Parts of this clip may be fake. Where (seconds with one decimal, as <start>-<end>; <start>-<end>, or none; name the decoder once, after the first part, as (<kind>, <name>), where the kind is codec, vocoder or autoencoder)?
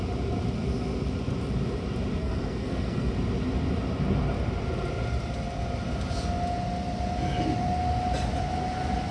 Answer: 2.2-3.1 (codec, SNAC)